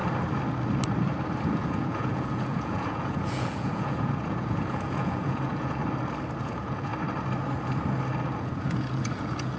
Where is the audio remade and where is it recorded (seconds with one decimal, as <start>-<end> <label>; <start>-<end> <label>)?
0.0-1.4 recorded; 1.4-5.8 remade; 5.8-6.4 recorded; 6.4-6.9 remade; 6.9-8.3 recorded; 8.3-9.6 remade